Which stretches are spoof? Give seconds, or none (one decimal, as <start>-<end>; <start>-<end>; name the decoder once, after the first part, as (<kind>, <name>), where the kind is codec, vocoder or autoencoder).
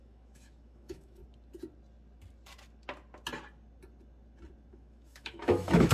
0.0-1.2 (autoencoder, DAC-VAE); 4.7-5.9